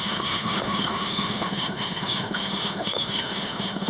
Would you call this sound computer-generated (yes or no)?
yes